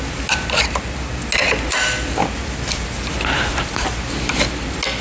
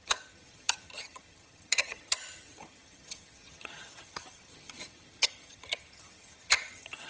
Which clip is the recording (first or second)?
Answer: first